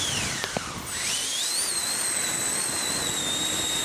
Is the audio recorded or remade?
recorded